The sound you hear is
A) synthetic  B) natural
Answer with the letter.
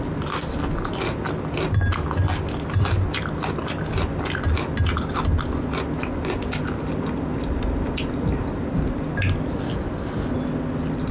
B